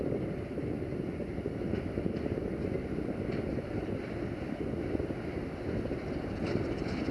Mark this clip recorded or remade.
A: recorded